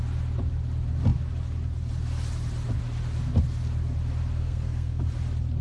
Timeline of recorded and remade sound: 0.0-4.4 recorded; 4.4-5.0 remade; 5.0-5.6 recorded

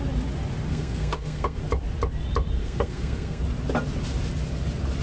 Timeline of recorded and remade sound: 0.0-0.7 recorded; 0.7-1.6 remade; 1.6-2.6 recorded; 2.6-3.4 remade; 3.4-5.0 recorded

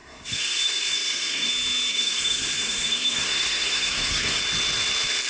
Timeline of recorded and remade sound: 0.0-1.5 remade; 1.5-1.9 recorded; 1.9-4.4 remade; 4.4-5.3 recorded